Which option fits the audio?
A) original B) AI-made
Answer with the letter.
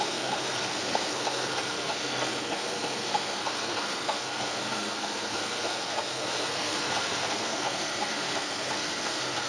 B